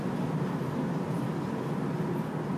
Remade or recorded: recorded